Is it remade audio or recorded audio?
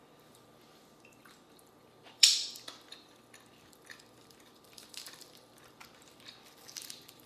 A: remade